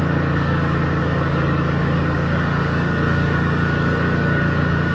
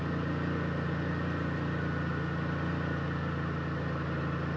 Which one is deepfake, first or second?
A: first